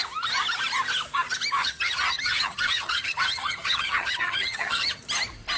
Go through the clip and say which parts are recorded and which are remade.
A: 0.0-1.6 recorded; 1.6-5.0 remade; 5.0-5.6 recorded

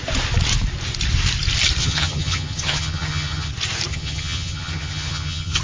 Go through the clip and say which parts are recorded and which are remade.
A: 0.0-1.8 recorded; 1.8-3.5 remade; 3.5-3.9 recorded; 3.9-5.6 remade

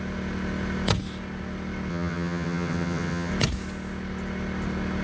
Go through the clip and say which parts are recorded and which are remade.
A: 0.0-1.9 recorded; 1.9-3.3 remade; 3.3-5.0 recorded